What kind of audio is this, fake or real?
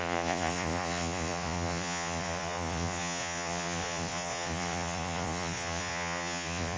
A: fake